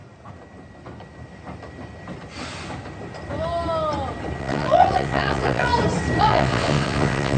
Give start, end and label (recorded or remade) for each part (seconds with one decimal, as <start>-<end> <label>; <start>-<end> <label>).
0.0-4.4 recorded; 4.4-5.7 remade; 5.7-6.2 recorded; 6.2-7.4 remade